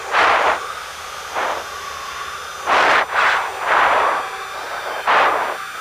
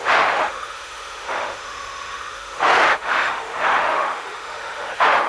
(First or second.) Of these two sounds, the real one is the first